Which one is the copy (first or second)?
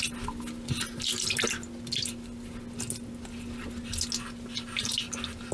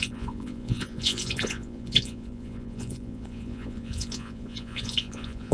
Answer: second